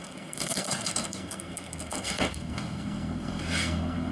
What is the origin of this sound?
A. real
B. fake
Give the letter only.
B